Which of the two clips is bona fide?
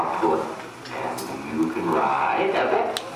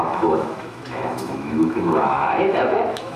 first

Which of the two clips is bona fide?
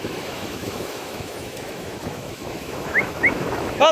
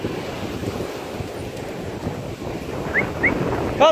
second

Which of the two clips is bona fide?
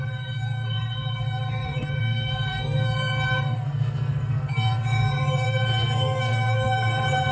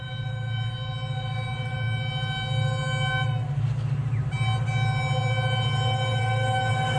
second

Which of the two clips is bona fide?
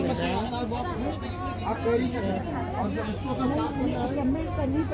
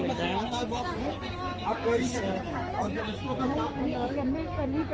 first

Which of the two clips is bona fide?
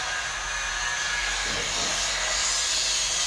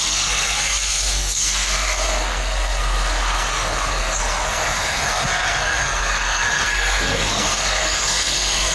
first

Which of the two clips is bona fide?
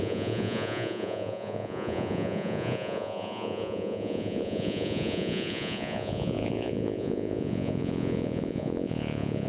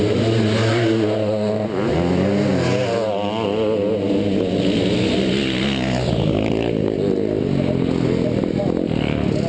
second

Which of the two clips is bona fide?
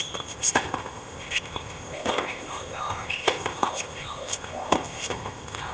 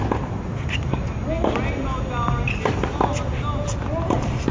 second